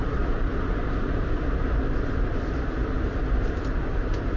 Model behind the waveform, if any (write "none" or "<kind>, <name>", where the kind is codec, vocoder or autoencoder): vocoder, BigVGAN v2